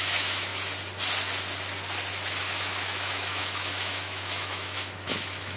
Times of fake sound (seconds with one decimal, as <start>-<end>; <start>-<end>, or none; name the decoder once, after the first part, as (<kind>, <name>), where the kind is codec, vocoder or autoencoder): 0.0-0.5 (autoencoder, DAC-VAE); 2.4-5.6